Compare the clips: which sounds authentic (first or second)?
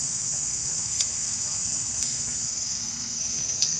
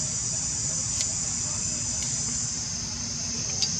second